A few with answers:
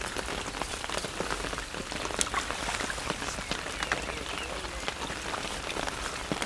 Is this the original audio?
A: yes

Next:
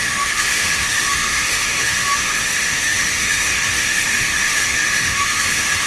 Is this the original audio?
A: no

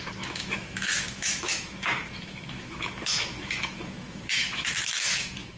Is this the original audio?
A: no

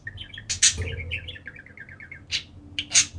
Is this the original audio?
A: yes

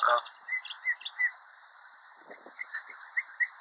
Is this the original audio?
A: yes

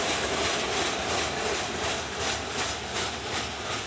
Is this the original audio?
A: yes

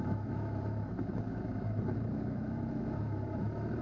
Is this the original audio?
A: no